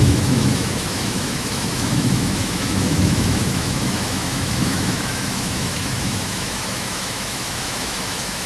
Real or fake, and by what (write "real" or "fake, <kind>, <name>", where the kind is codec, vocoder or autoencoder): fake, autoencoder, DAC-VAE